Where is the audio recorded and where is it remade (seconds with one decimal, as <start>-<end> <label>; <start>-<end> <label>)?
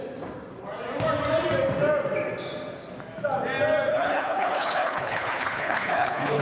0.0-3.9 recorded; 3.9-6.4 remade